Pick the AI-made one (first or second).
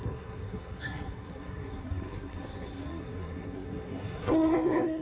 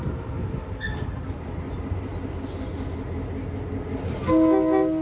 first